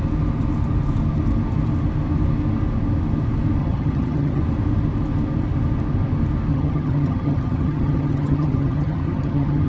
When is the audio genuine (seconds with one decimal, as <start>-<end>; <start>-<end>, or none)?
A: 0.0-3.6; 4.4-6.5

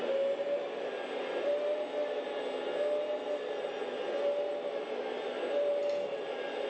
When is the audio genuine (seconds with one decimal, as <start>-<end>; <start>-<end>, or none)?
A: 0.0-6.7

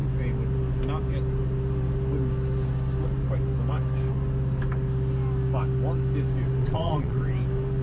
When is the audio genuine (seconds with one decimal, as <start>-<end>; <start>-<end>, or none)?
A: 0.0-6.6; 7.2-7.8

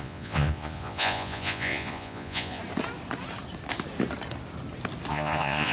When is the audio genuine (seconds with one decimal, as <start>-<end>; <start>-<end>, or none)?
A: 2.6-5.1

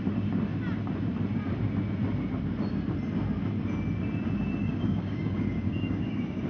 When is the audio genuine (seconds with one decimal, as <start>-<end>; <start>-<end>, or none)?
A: 0.0-4.6

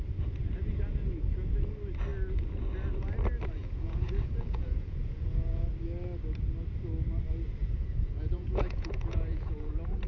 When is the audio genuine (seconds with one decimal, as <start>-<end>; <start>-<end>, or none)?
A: 0.0-3.6; 5.7-7.6; 9.7-10.1